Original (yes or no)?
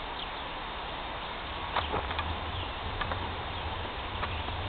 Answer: yes